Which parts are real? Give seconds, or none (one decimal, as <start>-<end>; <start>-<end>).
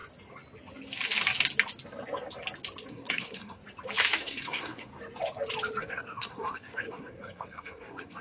0.0-2.9; 3.6-4.2; 4.9-5.8